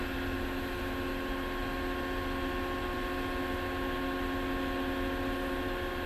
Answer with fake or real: real